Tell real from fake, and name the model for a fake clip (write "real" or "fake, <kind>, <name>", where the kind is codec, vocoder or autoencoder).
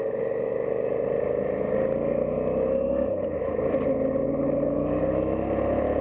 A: real